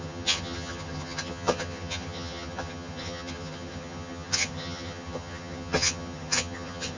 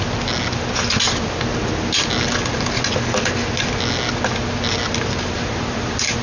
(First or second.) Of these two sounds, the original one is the second